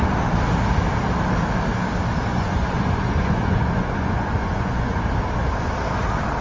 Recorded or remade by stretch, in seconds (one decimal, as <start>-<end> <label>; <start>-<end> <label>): 0.0-2.3 recorded; 2.3-5.0 remade; 5.0-6.4 recorded